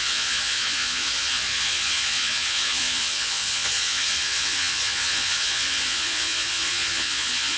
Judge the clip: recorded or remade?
remade